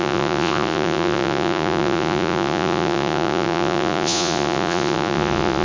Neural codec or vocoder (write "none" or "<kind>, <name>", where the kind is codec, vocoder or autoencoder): vocoder, Vocos